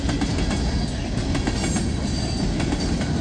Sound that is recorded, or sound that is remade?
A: recorded